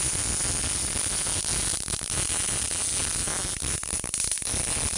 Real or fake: real